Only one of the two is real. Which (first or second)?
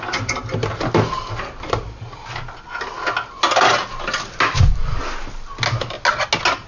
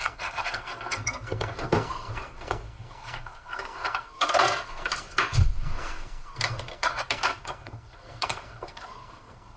first